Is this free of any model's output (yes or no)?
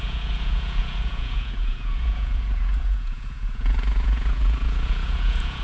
no